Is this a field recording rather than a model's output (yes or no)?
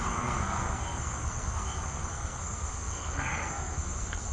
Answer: no